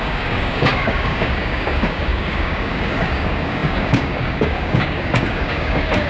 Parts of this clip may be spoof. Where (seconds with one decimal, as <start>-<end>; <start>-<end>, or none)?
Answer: 0.0-6.1